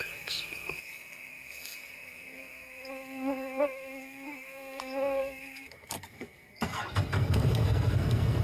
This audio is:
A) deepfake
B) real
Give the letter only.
A